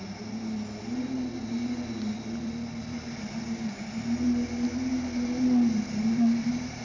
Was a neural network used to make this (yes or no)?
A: no